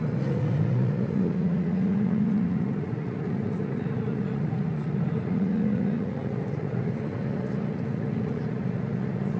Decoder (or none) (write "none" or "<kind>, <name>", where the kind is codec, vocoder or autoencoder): vocoder, Vocos